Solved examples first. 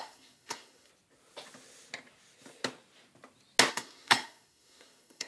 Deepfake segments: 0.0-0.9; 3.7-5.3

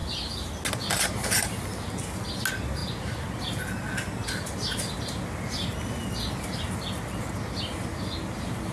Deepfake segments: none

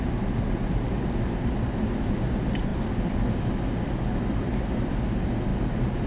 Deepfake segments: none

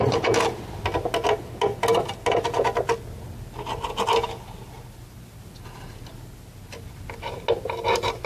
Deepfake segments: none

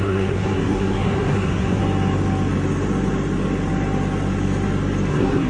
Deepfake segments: 0.0-1.8; 5.1-5.5

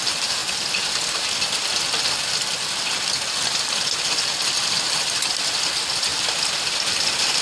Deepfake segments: none

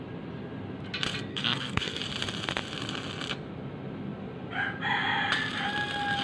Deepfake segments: 1.3-2.0

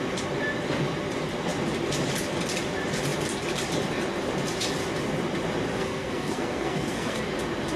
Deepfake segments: 5.7-7.2